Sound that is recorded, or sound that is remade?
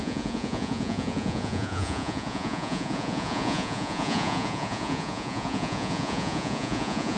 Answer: remade